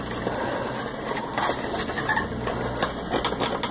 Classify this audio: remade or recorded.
recorded